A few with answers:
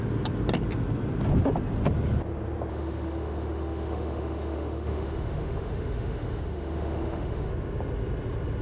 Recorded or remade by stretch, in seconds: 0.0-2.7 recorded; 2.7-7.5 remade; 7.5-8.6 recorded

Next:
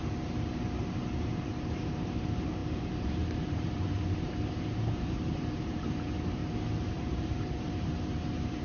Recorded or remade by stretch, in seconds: 0.0-6.4 remade; 6.4-6.9 recorded; 6.9-8.6 remade

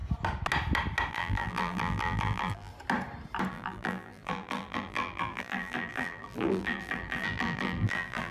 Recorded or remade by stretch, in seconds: 0.0-1.1 recorded; 1.1-2.7 remade; 2.7-3.5 recorded; 3.5-8.3 remade

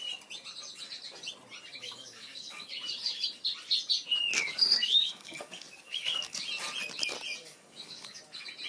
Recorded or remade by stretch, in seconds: 0.0-1.8 recorded; 1.8-2.7 remade; 2.7-4.4 recorded; 4.4-6.4 remade; 6.4-7.4 recorded; 7.4-8.2 remade; 8.2-8.7 recorded